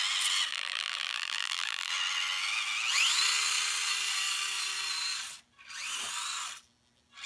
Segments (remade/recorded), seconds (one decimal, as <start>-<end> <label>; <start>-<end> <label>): 0.0-0.5 recorded; 0.5-1.9 remade; 1.9-7.3 recorded